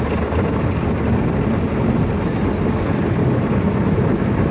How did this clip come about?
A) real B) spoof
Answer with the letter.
A